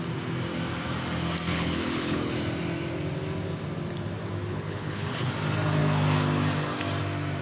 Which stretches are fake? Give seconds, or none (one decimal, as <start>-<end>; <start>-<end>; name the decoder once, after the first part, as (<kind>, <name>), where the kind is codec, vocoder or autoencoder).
1.5-2.3 (codec, HILCodec); 4.5-5.3